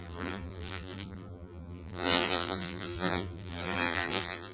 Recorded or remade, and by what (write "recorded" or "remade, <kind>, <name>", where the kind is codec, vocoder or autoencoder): remade, vocoder, BigVGAN v2